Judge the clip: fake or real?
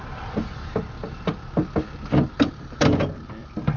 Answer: real